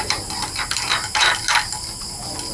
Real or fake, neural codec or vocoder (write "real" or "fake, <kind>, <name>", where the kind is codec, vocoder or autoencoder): fake, vocoder, BigVGAN v2